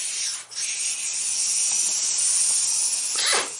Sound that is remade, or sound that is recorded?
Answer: recorded